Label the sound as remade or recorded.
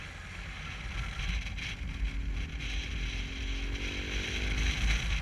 recorded